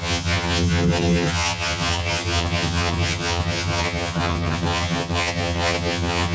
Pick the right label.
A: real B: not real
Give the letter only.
B